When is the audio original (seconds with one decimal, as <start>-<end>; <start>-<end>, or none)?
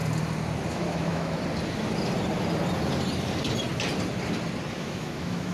0.0-0.7; 1.4-4.7